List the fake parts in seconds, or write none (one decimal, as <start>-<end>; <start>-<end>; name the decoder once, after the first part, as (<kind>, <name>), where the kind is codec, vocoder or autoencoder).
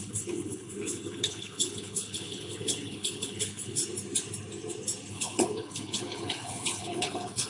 0.0-3.8 (codec, HILCodec); 5.1-7.5